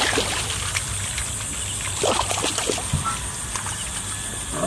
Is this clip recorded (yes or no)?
yes